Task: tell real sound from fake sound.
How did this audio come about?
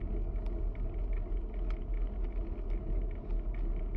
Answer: real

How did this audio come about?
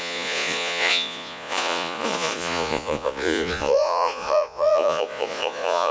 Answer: fake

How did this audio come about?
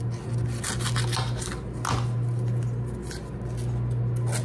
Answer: real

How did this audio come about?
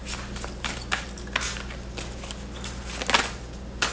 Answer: real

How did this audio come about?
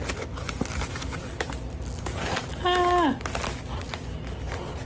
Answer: real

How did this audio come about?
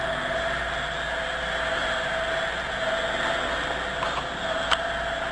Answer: real